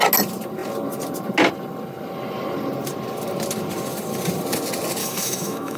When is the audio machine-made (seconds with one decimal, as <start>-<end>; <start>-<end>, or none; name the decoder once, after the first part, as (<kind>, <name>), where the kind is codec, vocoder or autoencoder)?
5.0-5.8 (autoencoder, DAC-VAE)